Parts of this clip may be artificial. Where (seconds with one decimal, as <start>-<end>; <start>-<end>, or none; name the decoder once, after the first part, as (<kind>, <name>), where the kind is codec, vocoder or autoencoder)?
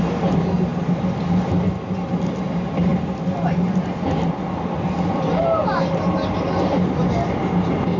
0.7-1.7 (vocoder, BigVGAN v2); 2.9-7.4